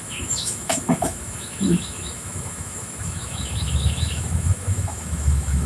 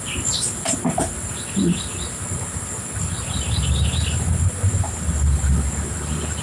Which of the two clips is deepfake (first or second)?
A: first